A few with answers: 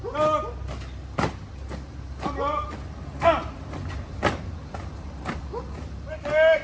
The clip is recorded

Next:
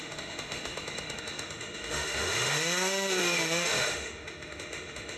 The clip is remade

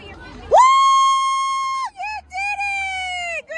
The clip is recorded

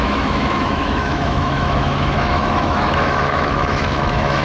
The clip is remade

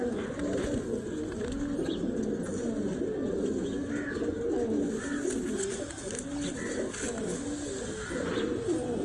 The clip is recorded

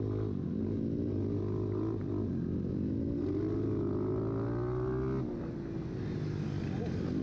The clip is recorded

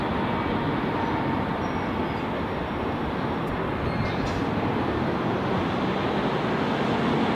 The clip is recorded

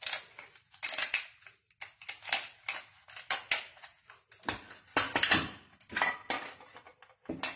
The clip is recorded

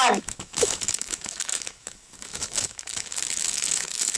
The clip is remade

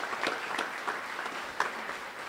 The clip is recorded